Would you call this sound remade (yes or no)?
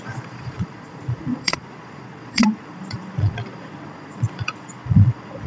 yes